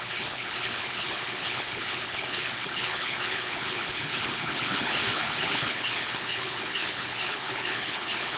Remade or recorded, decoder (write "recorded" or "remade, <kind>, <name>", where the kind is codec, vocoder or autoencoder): remade, codec, HILCodec